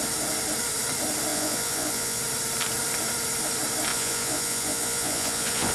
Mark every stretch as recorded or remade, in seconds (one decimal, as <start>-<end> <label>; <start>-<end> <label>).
0.0-1.3 recorded; 1.3-2.2 remade; 2.2-3.9 recorded; 3.9-5.7 remade